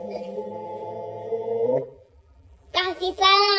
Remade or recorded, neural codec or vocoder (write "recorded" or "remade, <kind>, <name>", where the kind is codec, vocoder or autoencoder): remade, vocoder, BigVGAN v2